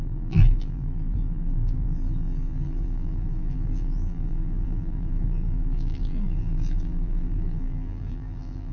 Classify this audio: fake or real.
fake